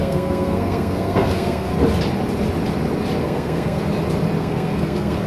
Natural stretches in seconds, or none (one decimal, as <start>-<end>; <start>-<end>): 1.7-3.2; 3.8-4.4